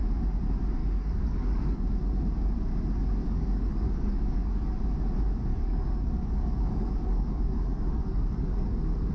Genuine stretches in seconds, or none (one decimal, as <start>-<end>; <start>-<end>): 0.0-0.8; 1.8-3.2; 4.7-5.5; 8.7-9.1